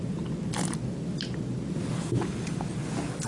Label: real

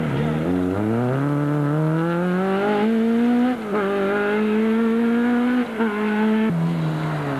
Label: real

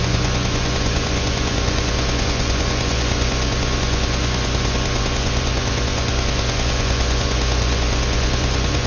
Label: fake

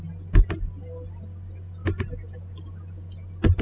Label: real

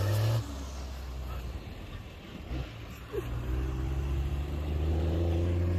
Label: real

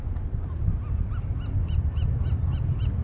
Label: real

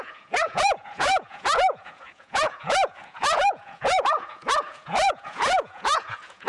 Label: fake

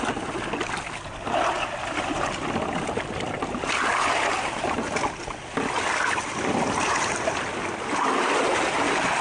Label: real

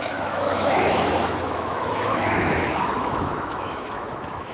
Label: fake